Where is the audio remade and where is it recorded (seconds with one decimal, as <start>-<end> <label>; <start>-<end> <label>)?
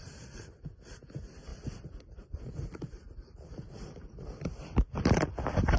0.0-5.8 recorded